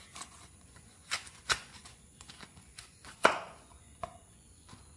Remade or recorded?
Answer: remade